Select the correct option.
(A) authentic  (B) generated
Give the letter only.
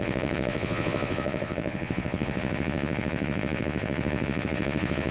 B